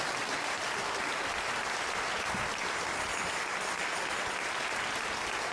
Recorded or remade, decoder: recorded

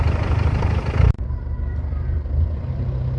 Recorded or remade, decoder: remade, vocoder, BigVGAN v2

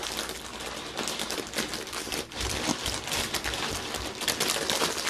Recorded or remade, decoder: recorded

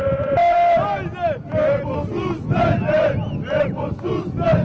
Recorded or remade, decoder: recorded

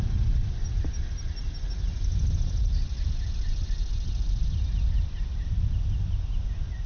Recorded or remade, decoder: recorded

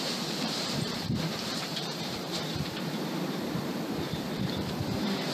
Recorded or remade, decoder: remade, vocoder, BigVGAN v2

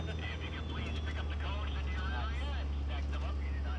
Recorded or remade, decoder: recorded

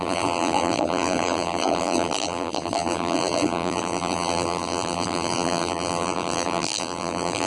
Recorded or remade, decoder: remade, vocoder, BigVGAN v2